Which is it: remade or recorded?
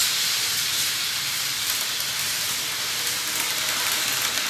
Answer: remade